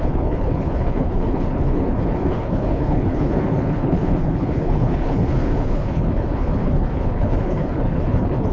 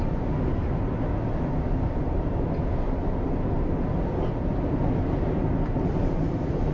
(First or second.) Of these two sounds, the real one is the second